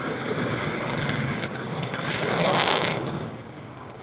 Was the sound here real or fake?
fake